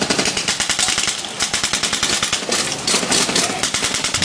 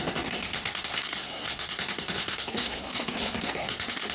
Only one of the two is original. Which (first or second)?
first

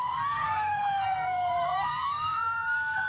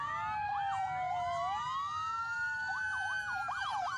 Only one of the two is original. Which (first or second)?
second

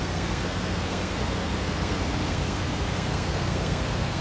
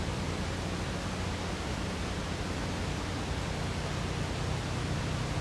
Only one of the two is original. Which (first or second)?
second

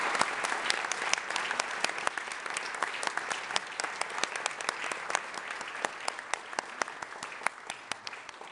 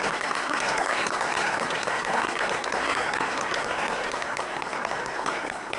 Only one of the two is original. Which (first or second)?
first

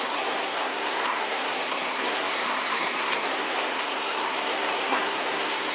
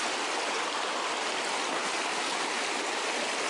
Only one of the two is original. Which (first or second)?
second